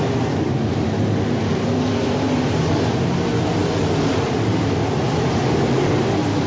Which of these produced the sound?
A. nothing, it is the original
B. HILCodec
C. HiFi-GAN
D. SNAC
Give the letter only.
A